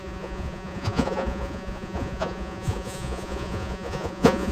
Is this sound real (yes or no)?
no